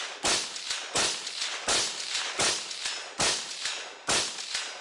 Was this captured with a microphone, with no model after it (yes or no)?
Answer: yes